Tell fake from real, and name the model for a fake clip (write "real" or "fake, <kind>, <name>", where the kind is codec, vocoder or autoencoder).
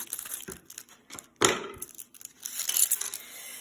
real